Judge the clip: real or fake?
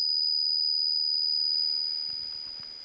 real